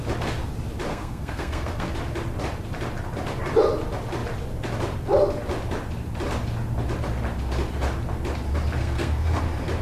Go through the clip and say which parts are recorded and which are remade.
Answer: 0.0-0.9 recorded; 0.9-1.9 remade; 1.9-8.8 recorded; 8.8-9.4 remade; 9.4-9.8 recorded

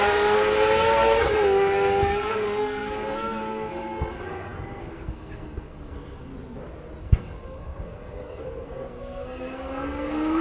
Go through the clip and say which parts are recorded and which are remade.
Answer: 0.0-6.3 remade; 6.3-7.0 recorded; 7.0-10.4 remade

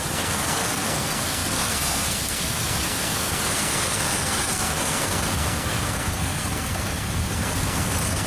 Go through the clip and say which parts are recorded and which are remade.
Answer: 0.0-8.3 remade

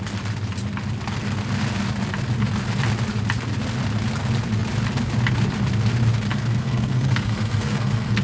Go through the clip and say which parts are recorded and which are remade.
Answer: 0.0-6.3 recorded; 6.3-8.2 remade

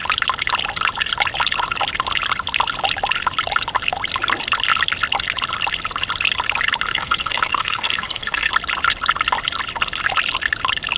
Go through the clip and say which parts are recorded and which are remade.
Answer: 0.0-6.9 recorded; 6.9-8.5 remade; 8.5-11.0 recorded

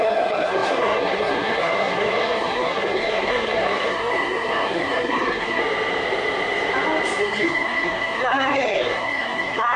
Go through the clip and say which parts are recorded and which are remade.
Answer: 0.0-5.6 remade; 5.6-7.2 recorded; 7.2-9.8 remade